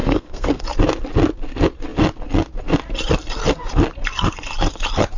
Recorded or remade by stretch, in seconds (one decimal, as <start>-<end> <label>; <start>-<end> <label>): 0.0-0.6 remade; 0.6-5.2 recorded